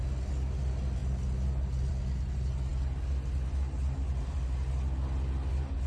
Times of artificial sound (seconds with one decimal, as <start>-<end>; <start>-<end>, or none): none